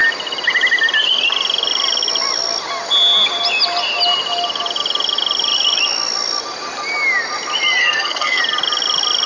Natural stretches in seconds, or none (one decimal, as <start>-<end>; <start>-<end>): 0.0-7.8; 8.4-9.3